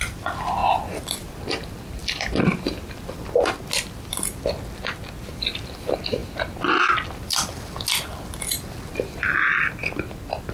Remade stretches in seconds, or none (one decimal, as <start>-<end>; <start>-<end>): 0.6-1.3; 2.0-2.6